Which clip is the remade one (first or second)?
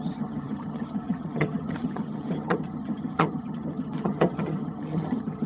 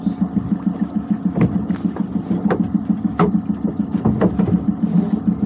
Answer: first